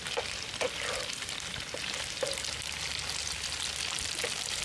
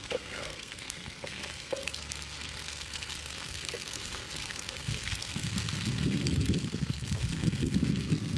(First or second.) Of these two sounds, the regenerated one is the second